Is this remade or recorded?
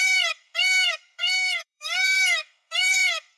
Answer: remade